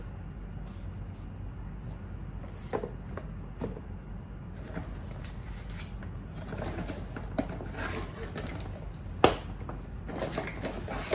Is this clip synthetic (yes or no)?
no